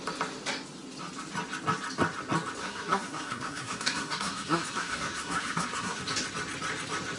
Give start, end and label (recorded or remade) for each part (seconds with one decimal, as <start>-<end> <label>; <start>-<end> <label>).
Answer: 0.0-2.6 recorded; 2.6-6.0 remade; 6.0-7.2 recorded